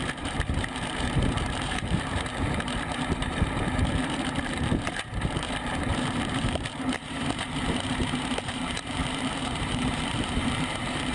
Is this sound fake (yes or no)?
yes